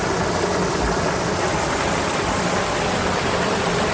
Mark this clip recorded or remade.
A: recorded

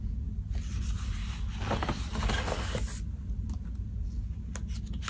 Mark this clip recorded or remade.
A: recorded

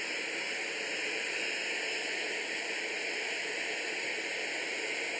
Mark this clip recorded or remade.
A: recorded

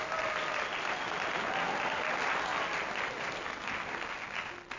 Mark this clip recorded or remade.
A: recorded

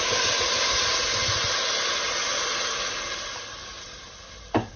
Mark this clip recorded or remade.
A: recorded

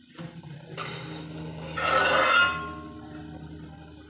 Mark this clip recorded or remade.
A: recorded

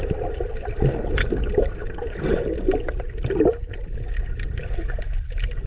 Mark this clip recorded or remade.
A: recorded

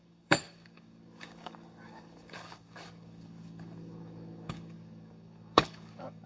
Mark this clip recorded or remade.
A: remade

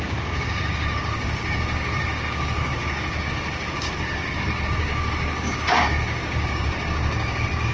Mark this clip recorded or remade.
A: remade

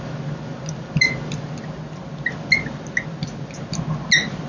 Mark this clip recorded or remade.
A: recorded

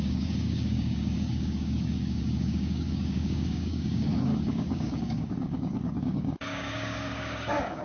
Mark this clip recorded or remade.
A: remade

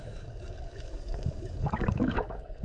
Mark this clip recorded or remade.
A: remade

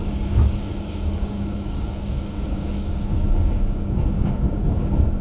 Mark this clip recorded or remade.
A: remade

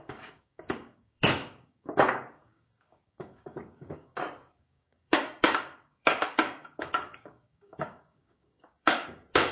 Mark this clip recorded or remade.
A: remade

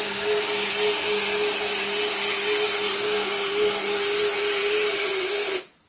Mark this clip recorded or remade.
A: recorded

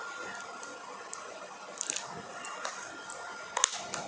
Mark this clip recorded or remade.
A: recorded